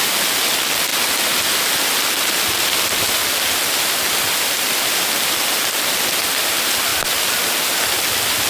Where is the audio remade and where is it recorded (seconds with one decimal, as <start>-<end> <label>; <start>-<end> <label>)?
0.0-8.5 recorded